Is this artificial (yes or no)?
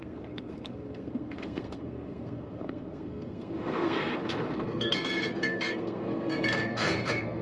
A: yes